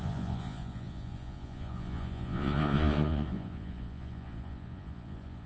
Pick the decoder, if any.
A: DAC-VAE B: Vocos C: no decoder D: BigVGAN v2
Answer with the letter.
B